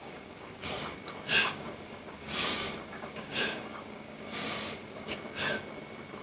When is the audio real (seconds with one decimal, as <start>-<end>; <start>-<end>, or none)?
0.8-1.4; 5.1-6.2